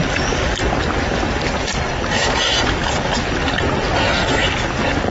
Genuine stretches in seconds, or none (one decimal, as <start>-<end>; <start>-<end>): 0.0-1.7; 2.6-5.1